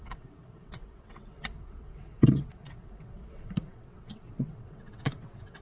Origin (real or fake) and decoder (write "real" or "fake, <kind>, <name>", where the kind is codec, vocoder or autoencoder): fake, vocoder, WaveNeXt